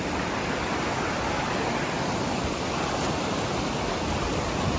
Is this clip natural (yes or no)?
yes